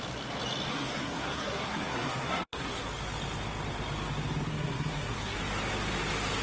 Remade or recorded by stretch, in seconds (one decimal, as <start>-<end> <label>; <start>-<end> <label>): 0.0-0.7 recorded; 0.7-2.9 remade; 2.9-4.5 recorded; 4.5-5.4 remade; 5.4-6.4 recorded